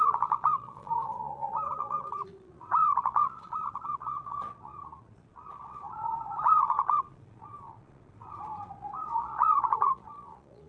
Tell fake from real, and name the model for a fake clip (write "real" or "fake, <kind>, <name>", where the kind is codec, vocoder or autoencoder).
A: fake, vocoder, Vocos